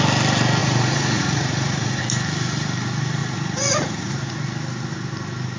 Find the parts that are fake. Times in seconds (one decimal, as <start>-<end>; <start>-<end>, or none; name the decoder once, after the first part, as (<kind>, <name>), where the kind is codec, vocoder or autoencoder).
0.6-2.0 (vocoder, Vocos); 3.2-4.3